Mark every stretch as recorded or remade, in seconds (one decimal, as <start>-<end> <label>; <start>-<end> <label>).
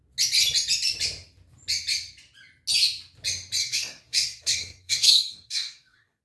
0.0-3.6 recorded; 3.6-6.2 remade